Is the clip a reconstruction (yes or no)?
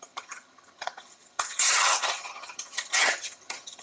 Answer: yes